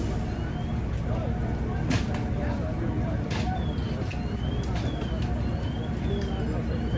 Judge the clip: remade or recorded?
recorded